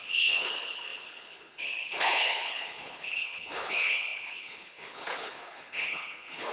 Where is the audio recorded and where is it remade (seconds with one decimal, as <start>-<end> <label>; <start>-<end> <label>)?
0.0-6.5 remade